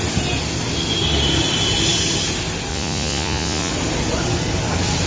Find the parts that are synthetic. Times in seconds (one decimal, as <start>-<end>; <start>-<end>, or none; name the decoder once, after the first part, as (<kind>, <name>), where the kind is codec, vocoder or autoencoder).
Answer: 2.7-3.7 (vocoder, Vocos)